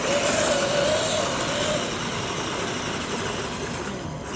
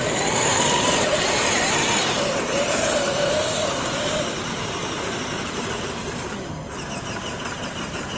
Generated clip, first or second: second